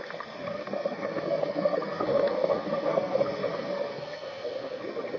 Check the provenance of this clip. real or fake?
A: fake